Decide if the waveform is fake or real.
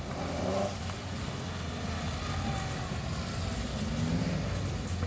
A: real